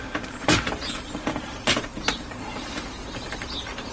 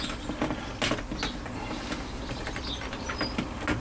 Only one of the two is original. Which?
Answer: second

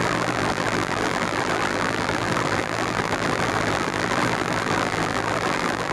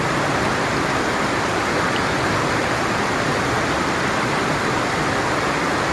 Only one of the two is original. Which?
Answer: second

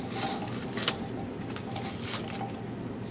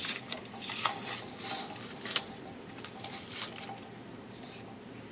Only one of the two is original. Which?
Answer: first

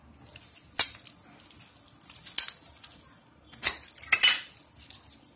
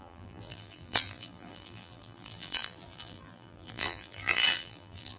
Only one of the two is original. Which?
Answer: first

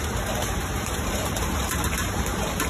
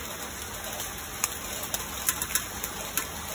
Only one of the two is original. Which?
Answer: second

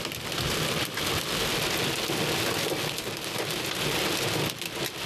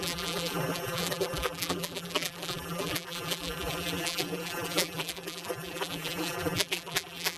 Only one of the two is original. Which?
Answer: first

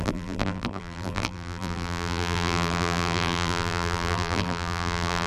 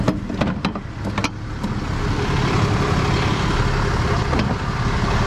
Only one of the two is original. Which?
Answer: second